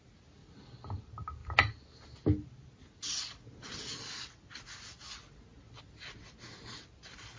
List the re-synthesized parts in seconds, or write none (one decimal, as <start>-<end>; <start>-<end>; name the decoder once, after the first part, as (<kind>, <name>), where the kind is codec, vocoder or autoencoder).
none